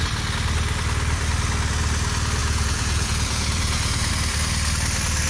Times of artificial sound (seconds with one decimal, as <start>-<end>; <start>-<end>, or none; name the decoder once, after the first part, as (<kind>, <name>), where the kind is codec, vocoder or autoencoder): 2.4-4.1 (vocoder, Vocos)